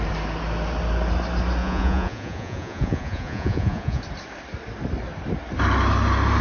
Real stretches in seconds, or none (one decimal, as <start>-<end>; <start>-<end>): 0.0-1.6; 4.0-6.4